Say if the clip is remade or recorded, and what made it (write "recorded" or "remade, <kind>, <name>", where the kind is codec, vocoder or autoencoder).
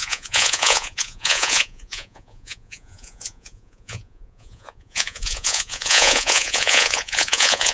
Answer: remade, vocoder, Vocos